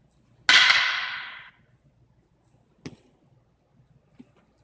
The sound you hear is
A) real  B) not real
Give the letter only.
A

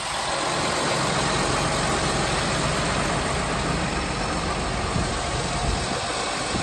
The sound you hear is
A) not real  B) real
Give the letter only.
B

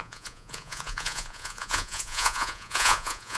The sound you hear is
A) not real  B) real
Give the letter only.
A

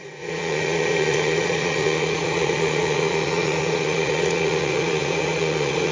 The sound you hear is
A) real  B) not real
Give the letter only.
B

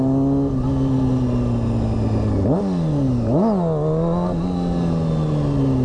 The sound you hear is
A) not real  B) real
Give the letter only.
B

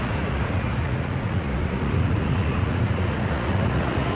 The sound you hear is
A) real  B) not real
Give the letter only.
B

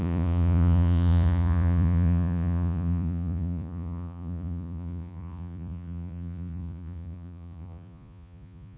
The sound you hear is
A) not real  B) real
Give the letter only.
A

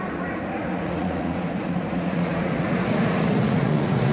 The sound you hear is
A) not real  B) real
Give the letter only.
A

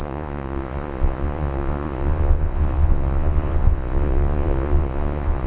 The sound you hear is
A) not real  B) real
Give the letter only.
A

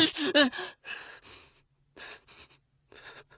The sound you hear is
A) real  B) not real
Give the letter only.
A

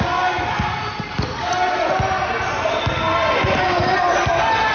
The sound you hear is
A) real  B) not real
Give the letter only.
A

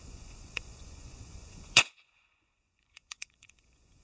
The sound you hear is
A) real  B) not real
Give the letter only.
B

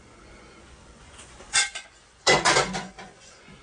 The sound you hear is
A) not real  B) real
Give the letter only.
A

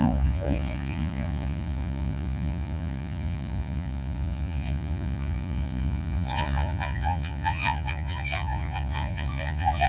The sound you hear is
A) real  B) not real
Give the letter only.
B